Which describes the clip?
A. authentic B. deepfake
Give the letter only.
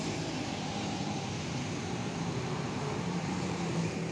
B